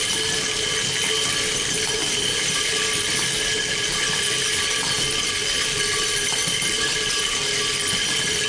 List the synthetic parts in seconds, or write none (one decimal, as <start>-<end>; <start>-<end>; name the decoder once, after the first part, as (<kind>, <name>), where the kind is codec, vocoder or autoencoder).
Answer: none

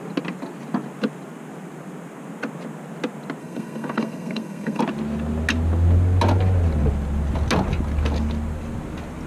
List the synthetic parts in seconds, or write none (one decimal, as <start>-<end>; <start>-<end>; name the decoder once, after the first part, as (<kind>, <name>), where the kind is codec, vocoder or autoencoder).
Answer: 3.4-4.8 (codec, SNAC)

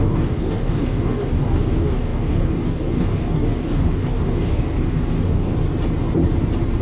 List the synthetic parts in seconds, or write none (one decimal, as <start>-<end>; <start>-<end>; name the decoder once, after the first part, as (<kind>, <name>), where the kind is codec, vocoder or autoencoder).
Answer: 0.0-5.5 (codec, DAC)